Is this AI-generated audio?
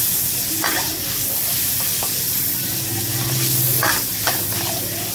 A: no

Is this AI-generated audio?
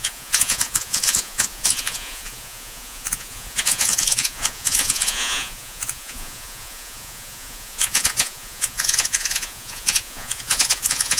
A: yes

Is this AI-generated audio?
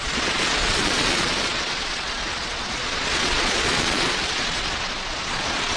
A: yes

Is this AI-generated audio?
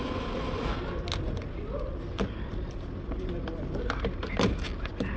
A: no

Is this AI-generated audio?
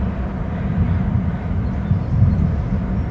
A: no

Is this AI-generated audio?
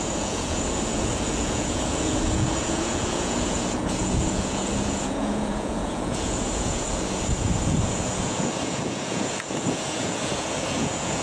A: yes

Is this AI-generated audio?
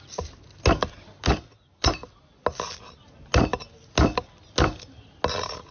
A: no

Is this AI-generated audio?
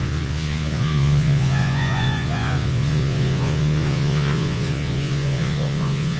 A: yes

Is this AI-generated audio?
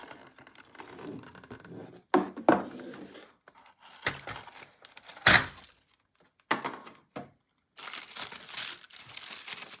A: no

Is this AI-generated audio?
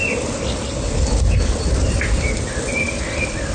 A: no